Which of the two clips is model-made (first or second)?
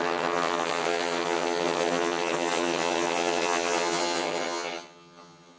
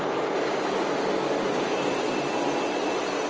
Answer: first